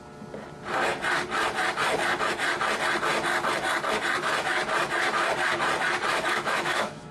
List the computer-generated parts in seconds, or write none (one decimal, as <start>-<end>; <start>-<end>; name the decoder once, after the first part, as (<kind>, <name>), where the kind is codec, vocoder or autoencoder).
6.1-7.1 (autoencoder, DAC-VAE)